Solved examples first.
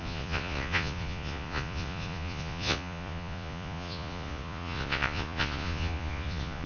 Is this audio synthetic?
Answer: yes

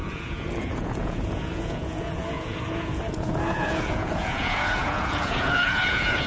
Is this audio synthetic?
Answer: yes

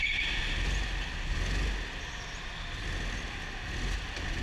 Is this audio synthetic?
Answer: no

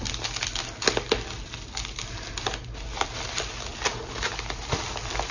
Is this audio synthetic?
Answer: no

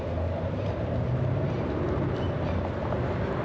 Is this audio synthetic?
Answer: no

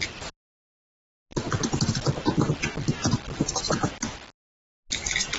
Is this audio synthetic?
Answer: no